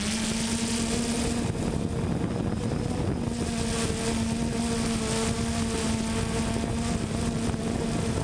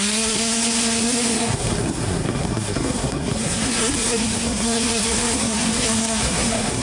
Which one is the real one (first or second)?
first